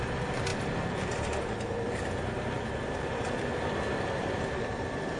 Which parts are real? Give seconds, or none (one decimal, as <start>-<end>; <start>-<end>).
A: 3.5-4.0